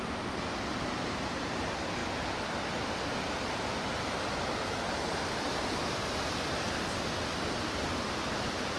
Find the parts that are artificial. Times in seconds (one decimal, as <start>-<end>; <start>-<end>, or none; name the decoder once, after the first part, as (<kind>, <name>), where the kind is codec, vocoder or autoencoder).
0.7-1.5 (vocoder, BigVGAN v2)